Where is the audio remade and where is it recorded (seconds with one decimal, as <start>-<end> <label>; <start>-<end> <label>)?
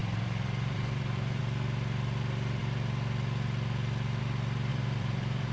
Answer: 0.0-1.4 remade; 1.4-4.7 recorded; 4.7-5.5 remade